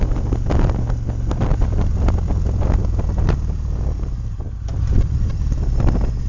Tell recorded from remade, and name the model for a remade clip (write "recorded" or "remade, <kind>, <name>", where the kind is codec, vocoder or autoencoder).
recorded